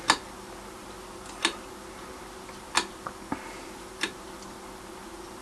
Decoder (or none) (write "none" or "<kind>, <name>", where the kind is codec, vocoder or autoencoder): none